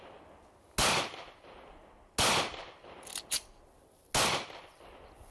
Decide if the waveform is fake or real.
real